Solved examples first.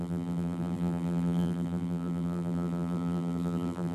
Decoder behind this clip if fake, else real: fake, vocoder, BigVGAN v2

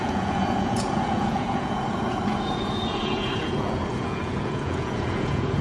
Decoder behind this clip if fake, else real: fake, vocoder, Vocos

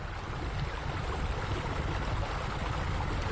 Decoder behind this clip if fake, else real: real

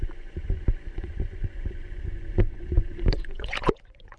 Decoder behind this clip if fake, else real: fake, vocoder, Vocos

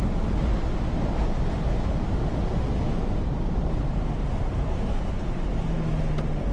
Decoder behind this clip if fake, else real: real